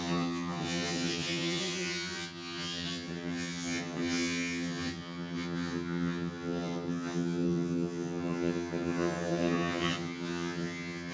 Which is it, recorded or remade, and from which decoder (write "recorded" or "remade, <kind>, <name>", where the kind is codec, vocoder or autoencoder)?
remade, vocoder, HiFi-GAN